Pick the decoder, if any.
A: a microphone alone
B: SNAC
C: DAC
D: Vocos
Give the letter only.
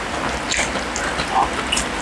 A